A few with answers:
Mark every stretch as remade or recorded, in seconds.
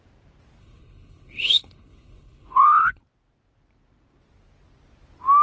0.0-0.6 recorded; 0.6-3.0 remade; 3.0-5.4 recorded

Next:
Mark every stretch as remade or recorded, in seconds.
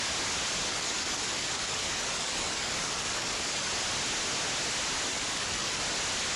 0.0-0.7 recorded; 0.7-3.7 remade; 3.7-5.1 recorded; 5.1-5.8 remade; 5.8-6.4 recorded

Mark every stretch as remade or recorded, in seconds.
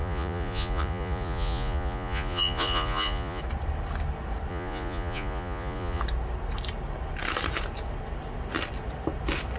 0.0-3.4 remade; 3.4-4.5 recorded; 4.5-6.0 remade; 6.0-9.6 recorded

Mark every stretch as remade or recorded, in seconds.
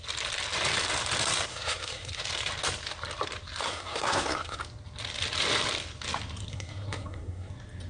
0.0-1.5 recorded; 1.5-2.2 remade; 2.2-3.6 recorded; 3.6-4.6 remade; 4.6-6.5 recorded; 6.5-7.5 remade; 7.5-7.9 recorded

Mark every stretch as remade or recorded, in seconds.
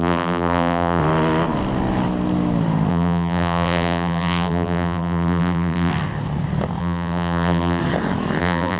0.0-1.0 remade; 1.0-2.9 recorded; 2.9-5.9 remade; 5.9-6.8 recorded; 6.8-7.8 remade; 7.8-8.4 recorded; 8.4-8.8 remade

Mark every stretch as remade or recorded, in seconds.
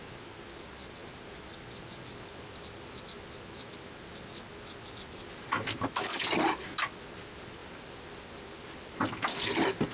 0.0-7.6 recorded; 7.6-8.2 remade; 8.2-9.9 recorded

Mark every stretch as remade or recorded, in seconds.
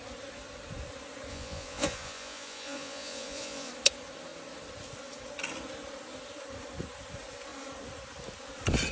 0.0-1.3 recorded; 1.3-3.7 remade; 3.7-8.9 recorded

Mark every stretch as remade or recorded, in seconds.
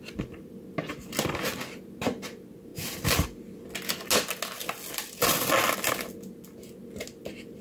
0.0-7.6 recorded